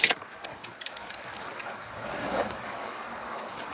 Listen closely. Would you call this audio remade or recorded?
remade